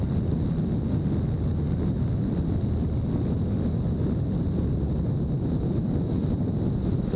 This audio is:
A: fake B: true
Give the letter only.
B